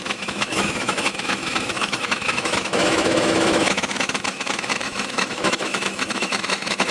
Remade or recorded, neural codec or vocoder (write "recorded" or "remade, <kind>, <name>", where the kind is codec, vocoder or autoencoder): remade, autoencoder, DAC-VAE